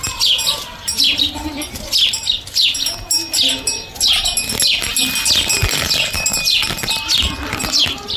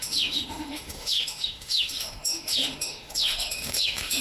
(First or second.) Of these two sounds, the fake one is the second